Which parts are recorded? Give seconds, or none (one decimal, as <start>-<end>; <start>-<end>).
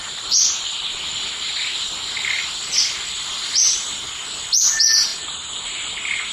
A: 0.0-6.3